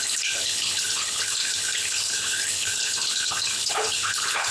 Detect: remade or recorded remade